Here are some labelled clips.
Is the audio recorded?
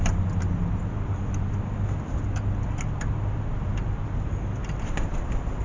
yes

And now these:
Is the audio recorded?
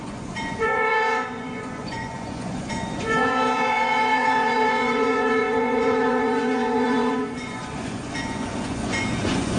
no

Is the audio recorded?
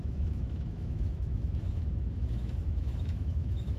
no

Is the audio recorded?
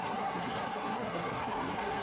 no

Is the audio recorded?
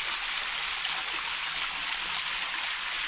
yes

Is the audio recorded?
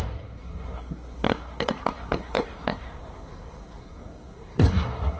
no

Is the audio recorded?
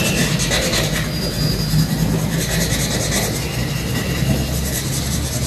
yes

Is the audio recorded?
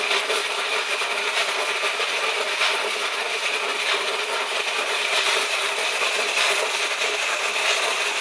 yes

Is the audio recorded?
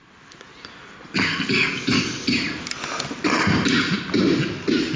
yes